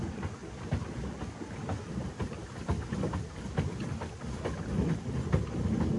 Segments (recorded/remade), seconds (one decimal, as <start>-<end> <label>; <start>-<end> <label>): 0.0-6.0 recorded